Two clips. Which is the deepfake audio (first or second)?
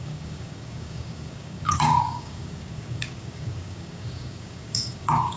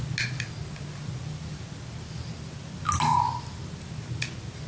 first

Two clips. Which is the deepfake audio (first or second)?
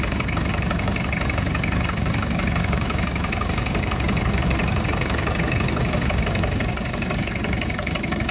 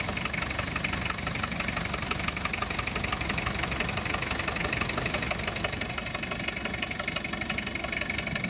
first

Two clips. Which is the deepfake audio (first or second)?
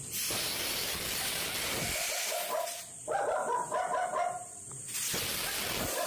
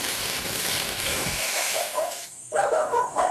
second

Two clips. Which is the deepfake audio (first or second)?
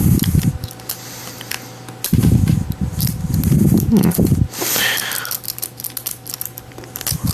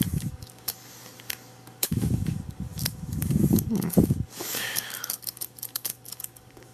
second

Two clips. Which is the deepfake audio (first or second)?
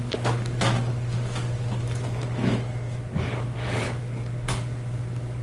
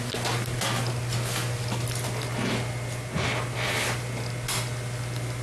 first